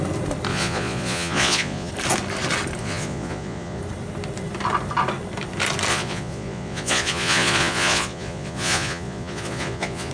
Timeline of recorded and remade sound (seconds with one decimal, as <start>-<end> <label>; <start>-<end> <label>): 0.0-0.5 recorded; 0.5-1.9 remade; 1.9-2.8 recorded; 2.8-3.8 remade; 3.8-5.9 recorded; 5.9-10.1 remade